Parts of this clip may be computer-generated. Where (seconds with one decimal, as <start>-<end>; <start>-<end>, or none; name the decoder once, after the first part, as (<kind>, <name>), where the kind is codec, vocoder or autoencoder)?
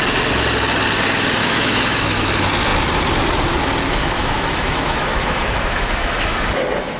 1.4-2.3 (autoencoder, DAC-VAE); 4.0-6.5